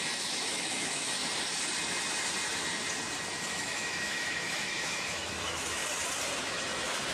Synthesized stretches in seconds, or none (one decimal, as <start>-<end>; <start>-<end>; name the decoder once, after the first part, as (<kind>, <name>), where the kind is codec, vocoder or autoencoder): 0.0-1.2 (autoencoder, DAC-VAE); 3.5-5.8; 6.4-7.1